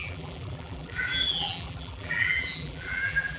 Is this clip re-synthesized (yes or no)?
yes